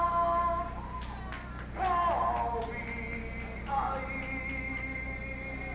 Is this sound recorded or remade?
recorded